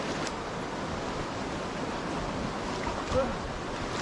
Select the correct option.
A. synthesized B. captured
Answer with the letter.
B